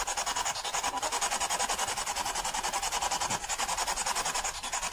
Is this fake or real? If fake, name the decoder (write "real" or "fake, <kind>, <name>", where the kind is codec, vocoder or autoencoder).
real